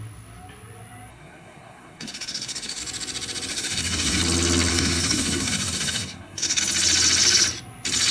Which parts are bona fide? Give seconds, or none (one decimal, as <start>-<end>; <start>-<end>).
0.0-1.1; 2.8-3.5; 4.2-4.7; 6.6-8.1